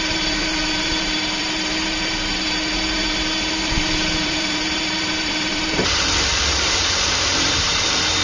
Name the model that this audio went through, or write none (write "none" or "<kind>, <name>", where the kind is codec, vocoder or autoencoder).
vocoder, BigVGAN v2